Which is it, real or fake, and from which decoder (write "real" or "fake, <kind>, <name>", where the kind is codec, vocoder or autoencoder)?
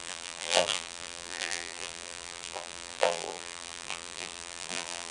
fake, vocoder, BigVGAN v2